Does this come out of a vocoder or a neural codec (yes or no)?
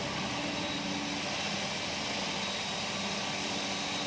no